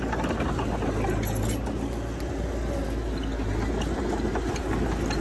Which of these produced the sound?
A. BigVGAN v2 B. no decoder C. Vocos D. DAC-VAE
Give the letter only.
B